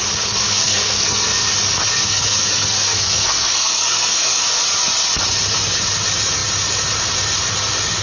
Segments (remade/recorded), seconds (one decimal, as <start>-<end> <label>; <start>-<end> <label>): 0.0-0.4 recorded; 0.4-1.5 remade; 1.5-1.9 recorded; 1.9-4.6 remade; 4.6-8.0 recorded

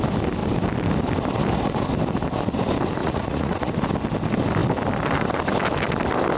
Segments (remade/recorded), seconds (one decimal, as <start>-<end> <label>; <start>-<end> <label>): 0.0-3.0 recorded; 3.0-3.7 remade; 3.7-6.4 recorded

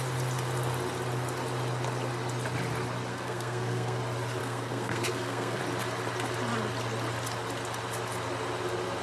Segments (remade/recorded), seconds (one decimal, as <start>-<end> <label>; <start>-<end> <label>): 0.0-3.1 recorded; 3.1-4.0 remade; 4.0-4.4 recorded; 4.4-5.6 remade; 5.6-9.0 recorded

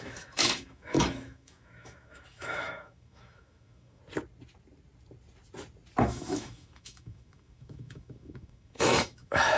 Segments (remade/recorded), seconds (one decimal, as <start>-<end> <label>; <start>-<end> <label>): 0.0-4.0 remade; 4.0-6.0 recorded; 6.0-9.6 remade

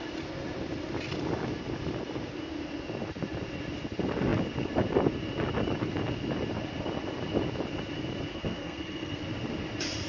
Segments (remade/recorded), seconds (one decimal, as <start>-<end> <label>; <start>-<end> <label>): 0.0-8.3 recorded; 8.3-9.2 remade; 9.2-10.1 recorded

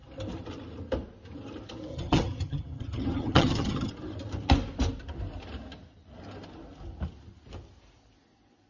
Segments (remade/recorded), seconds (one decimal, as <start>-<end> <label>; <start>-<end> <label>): 0.0-1.9 recorded; 1.9-3.9 remade; 3.9-8.7 recorded

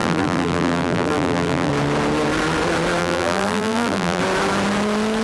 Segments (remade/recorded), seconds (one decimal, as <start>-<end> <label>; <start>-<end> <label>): 0.0-1.7 remade; 1.7-3.0 recorded; 3.0-4.2 remade; 4.2-5.2 recorded

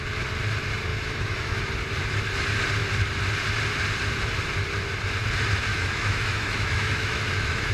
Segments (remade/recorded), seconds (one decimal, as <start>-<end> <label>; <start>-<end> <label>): 0.0-0.9 recorded; 0.9-1.6 remade; 1.6-5.7 recorded; 5.7-7.7 remade